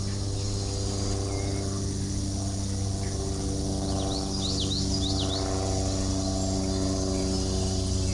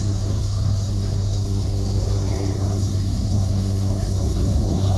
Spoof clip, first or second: second